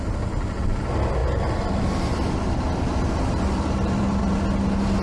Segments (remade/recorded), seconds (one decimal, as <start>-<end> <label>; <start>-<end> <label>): 0.0-1.2 recorded; 1.2-4.2 remade; 4.2-5.0 recorded